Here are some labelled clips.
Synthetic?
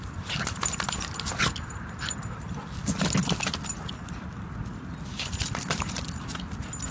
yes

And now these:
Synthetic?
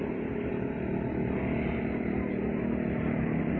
no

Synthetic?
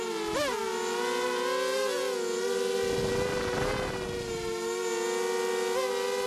no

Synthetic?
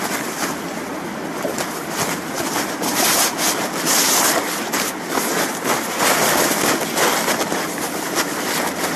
no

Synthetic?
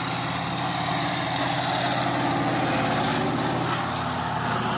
no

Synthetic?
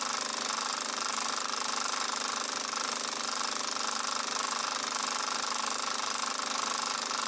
no